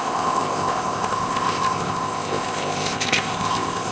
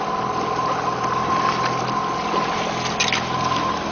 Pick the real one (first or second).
second